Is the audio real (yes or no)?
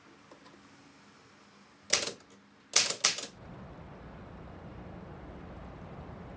yes